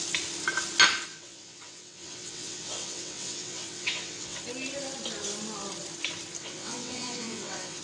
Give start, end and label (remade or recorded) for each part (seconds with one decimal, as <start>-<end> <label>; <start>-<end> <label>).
0.0-1.1 recorded; 1.1-4.4 remade; 4.4-6.4 recorded; 6.4-7.8 remade